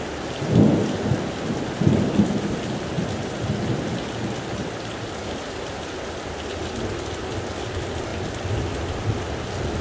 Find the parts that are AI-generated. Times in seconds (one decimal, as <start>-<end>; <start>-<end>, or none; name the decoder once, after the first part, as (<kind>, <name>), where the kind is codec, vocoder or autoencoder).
none